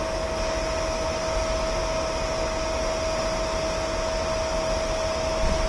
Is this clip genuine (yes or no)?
yes